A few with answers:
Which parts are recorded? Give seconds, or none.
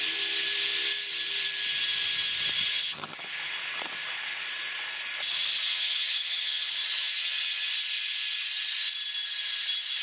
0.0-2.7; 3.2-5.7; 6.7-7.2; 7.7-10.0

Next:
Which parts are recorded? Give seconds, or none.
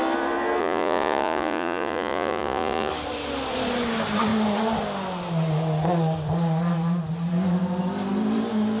0.0-0.6; 2.9-8.8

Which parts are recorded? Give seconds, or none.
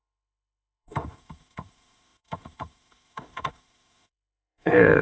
none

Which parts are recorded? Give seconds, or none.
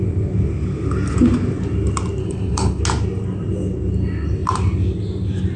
0.0-2.2; 2.8-5.6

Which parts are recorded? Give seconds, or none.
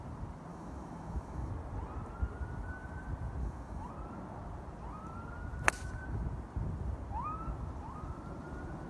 0.0-0.5; 1.5-3.4; 3.9-8.9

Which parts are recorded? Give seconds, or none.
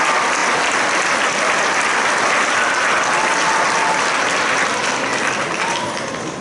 0.0-6.4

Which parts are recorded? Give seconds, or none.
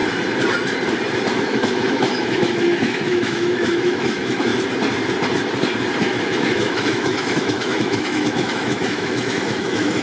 0.0-1.4; 4.5-6.0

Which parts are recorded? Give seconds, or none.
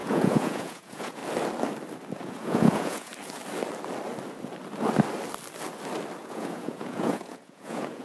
1.2-2.2; 3.1-6.2